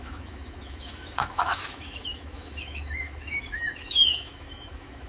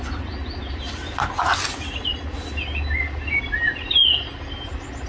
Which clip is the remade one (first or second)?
first